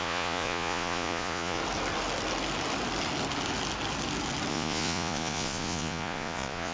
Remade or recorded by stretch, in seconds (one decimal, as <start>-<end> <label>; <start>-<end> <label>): 0.0-1.6 remade; 1.6-4.5 recorded; 4.5-6.7 remade